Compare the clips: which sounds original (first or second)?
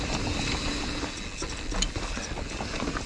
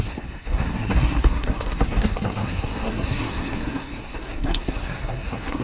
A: first